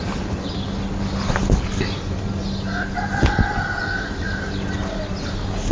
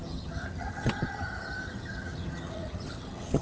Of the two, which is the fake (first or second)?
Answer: second